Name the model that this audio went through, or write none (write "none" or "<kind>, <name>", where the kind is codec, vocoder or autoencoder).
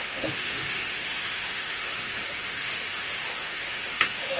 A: autoencoder, DAC-VAE